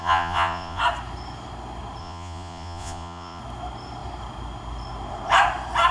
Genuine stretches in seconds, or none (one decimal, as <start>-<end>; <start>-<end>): 0.8-2.0; 3.4-5.9